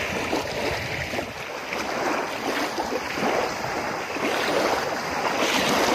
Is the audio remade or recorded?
recorded